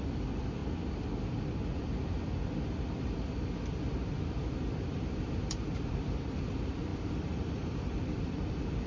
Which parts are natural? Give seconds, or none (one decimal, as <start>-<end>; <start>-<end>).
0.0-6.9; 8.2-8.9

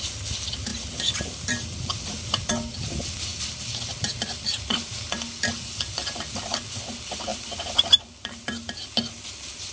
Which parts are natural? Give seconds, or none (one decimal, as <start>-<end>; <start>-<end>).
0.0-0.7; 1.7-4.1; 5.0-7.3; 7.9-9.7